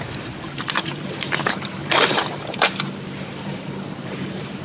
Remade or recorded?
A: remade